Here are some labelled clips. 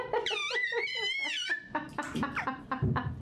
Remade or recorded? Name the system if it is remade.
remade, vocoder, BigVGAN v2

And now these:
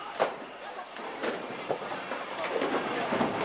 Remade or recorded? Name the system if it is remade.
remade, vocoder, BigVGAN v2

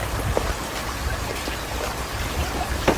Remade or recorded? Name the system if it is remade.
recorded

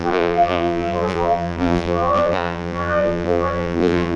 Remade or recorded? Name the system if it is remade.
remade, vocoder, BigVGAN v2